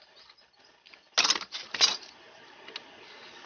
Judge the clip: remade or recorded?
recorded